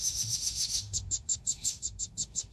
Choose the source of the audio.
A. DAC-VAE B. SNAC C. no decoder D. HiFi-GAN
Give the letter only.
A